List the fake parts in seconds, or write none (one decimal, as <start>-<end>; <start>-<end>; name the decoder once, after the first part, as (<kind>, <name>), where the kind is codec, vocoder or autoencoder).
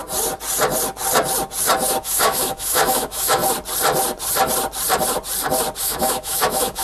2.0-3.4 (autoencoder, DAC-VAE); 5.8-6.8